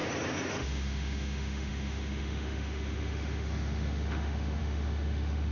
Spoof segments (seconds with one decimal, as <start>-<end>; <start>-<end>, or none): 0.5-5.5